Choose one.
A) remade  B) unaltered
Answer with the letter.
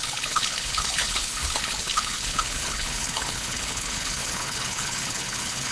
A